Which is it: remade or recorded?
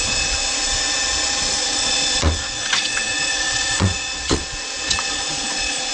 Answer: remade